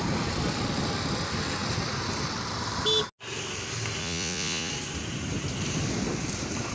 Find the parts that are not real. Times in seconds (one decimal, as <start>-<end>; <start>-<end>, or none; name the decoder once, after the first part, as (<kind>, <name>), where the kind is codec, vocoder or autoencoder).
4.0-4.7 (vocoder, Vocos)